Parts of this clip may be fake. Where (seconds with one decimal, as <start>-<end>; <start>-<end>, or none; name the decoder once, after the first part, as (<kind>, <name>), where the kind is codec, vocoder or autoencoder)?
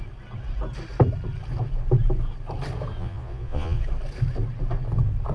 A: 3.0-3.8 (vocoder, Vocos)